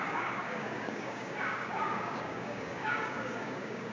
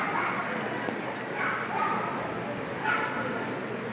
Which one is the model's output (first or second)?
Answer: first